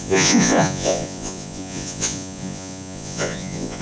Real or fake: fake